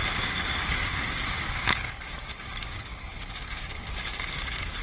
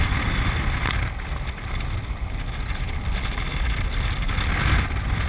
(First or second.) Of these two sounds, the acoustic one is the second